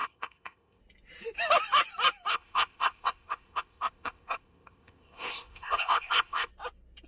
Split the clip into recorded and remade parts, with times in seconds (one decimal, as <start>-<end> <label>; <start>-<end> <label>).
0.0-0.8 remade; 0.8-2.3 recorded; 2.3-6.5 remade; 6.5-7.1 recorded